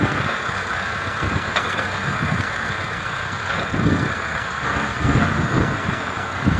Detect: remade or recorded remade